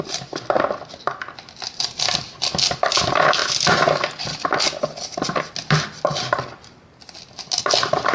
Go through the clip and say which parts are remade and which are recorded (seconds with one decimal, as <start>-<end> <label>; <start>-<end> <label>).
0.0-8.1 recorded